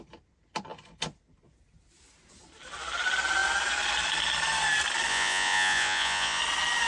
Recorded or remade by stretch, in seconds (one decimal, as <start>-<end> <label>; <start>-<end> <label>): 0.0-5.1 recorded; 5.1-6.4 remade; 6.4-6.9 recorded